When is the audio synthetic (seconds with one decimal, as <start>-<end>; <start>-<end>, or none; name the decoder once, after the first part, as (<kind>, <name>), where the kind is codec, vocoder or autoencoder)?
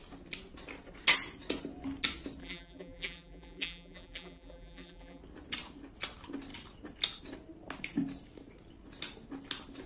2.4-5.2 (vocoder, BigVGAN v2)